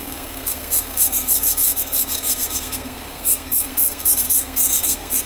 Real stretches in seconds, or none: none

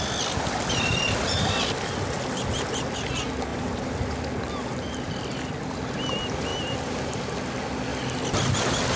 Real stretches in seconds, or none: 0.0-3.5; 4.0-6.5; 7.2-9.0

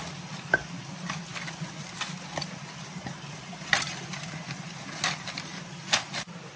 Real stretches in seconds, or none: 4.1-6.6

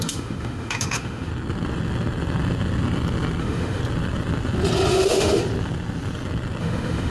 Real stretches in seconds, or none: 1.3-3.4; 3.8-4.9; 5.4-6.6

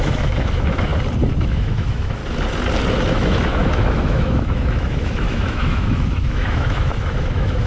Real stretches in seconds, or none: 0.9-1.4; 2.2-3.1

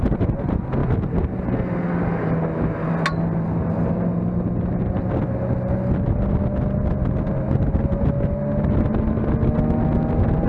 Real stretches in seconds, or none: 0.0-10.5

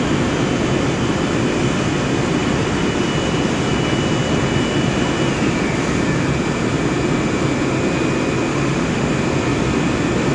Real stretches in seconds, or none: 0.0-8.5; 9.1-10.3

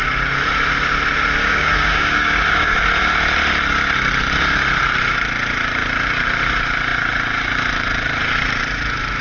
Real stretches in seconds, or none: 0.0-1.4; 2.8-9.2